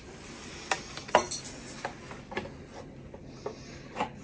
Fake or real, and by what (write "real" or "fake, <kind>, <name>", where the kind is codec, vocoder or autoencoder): real